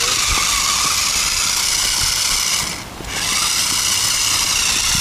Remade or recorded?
recorded